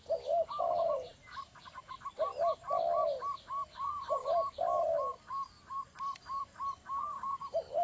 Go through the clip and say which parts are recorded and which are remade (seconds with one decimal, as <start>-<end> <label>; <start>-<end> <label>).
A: 0.0-0.6 recorded; 0.6-3.0 remade; 3.0-4.1 recorded; 4.1-7.8 remade